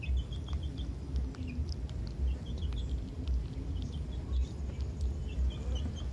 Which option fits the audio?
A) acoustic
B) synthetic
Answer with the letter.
A